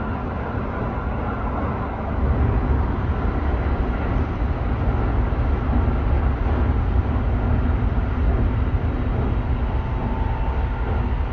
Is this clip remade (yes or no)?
no